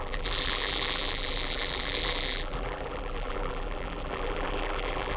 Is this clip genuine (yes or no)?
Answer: no